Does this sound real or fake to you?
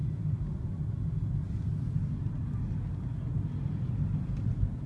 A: real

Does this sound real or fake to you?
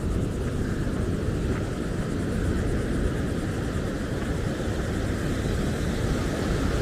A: real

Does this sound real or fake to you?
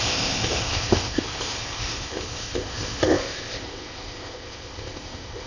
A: fake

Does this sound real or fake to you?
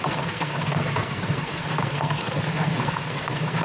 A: fake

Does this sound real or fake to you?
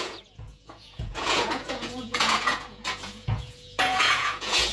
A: fake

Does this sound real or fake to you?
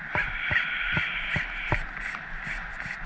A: real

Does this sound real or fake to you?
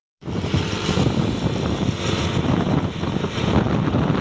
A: fake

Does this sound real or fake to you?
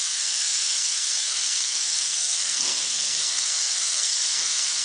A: fake